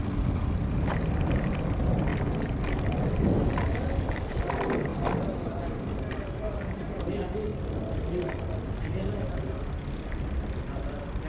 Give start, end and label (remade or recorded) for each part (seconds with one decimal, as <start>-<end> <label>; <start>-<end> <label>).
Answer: 0.0-11.3 recorded